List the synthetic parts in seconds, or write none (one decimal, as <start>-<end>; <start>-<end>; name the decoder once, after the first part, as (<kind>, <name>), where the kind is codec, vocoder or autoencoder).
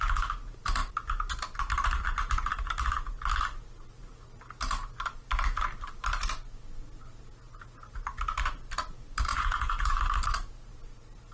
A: 9.3-10.0 (vocoder, Vocos)